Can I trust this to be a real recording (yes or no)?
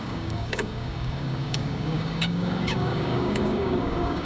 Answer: no